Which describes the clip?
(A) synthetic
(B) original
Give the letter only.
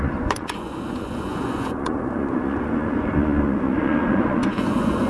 A